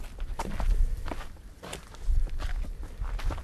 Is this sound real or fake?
real